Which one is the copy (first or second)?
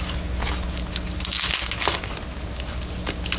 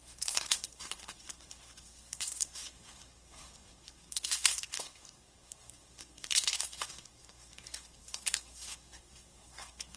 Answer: second